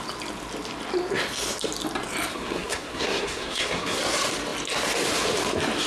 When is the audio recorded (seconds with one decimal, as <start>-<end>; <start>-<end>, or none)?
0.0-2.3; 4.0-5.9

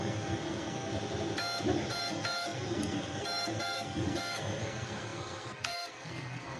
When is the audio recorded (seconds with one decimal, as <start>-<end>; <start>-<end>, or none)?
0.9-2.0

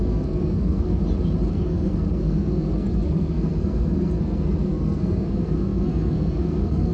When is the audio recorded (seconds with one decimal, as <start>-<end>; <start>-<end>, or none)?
1.0-1.5